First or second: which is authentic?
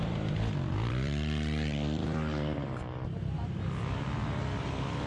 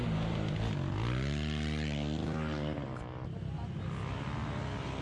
second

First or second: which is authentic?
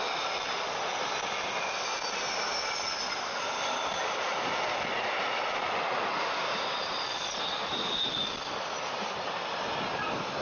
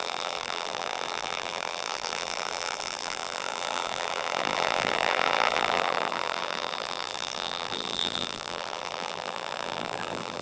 first